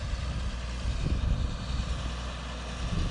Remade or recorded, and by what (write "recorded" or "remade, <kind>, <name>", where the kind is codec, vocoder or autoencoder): recorded